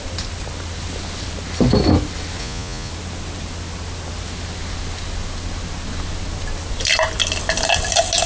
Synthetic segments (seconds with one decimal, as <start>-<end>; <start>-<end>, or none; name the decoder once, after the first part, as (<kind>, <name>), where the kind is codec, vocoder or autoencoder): 2.4-2.9 (vocoder, Vocos)